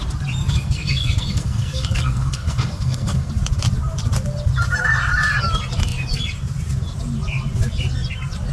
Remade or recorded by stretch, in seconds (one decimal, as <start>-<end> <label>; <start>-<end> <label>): 0.0-0.4 recorded; 0.4-3.3 remade; 3.3-8.5 recorded